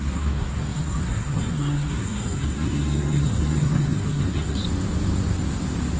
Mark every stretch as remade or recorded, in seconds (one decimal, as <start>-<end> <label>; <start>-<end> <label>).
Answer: 0.0-4.6 remade; 4.6-6.0 recorded